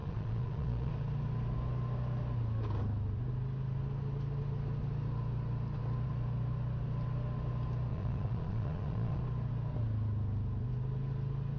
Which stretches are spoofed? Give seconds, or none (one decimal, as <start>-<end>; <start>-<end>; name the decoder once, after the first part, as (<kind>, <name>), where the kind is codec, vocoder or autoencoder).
0.0-0.9 (vocoder, Vocos); 7.9-9.2

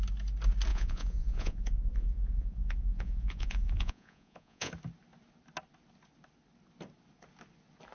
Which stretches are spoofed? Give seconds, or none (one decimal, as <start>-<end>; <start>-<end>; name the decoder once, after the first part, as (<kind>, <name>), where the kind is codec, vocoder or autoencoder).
0.7-4.7 (vocoder, Vocos)

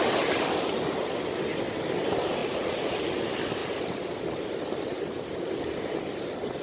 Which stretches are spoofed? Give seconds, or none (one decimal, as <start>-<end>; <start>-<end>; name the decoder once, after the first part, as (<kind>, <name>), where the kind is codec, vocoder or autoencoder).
2.4-3.2 (vocoder, Vocos)